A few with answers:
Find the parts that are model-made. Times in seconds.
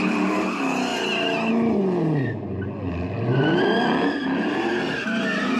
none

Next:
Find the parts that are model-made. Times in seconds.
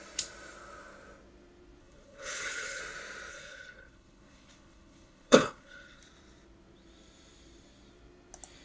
1.8-2.8 (codec, HILCodec); 3.3-6.0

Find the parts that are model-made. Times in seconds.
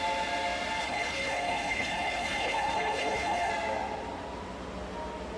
0.8-3.5 (codec, HILCodec)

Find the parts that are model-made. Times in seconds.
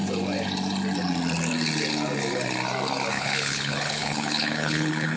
3.1-5.2 (codec, HILCodec)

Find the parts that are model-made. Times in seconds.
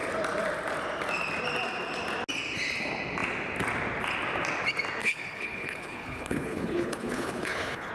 5.0-7.9 (codec, HILCodec)